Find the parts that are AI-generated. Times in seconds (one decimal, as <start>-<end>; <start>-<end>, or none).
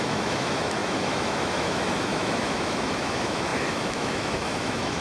0.0-5.0